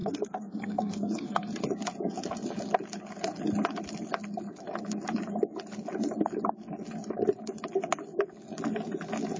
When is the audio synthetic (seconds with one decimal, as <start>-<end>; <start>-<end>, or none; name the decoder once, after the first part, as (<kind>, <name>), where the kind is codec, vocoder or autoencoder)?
0.0-1.5 (codec, SNAC)